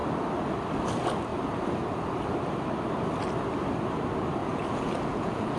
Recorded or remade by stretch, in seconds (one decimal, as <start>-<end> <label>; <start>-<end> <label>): 0.0-4.4 recorded; 4.4-5.6 remade